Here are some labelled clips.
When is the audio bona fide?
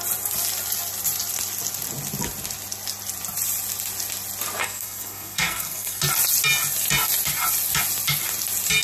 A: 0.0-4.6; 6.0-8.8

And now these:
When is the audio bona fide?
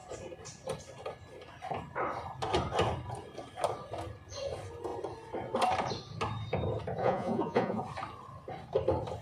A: 0.0-7.0; 7.8-9.2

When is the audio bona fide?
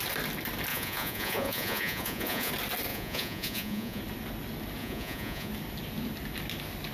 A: 0.0-0.7; 2.5-2.9; 4.0-4.8; 5.5-6.9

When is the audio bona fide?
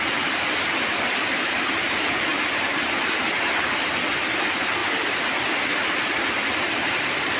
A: 0.0-7.4